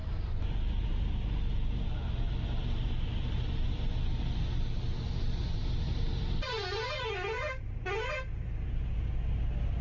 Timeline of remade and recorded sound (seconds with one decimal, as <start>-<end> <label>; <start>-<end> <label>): 0.0-1.0 remade; 1.0-5.6 recorded; 5.6-7.8 remade; 7.8-9.8 recorded